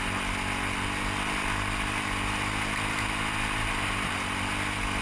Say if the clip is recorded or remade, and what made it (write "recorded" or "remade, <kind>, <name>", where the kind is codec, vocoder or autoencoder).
recorded